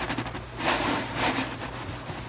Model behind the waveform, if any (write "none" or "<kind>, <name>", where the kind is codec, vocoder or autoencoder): none